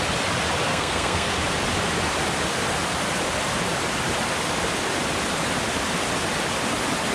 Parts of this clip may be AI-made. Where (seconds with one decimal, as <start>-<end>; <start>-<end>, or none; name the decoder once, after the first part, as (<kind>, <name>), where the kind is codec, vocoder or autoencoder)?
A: 0.7-1.3 (codec, SNAC)